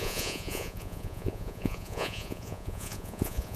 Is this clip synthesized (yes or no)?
yes